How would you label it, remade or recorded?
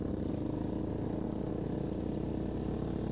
recorded